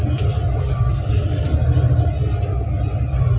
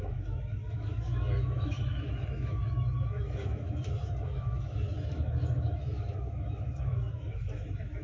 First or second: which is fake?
second